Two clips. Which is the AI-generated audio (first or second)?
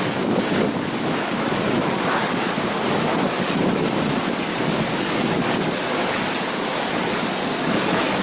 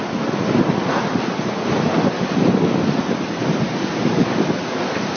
first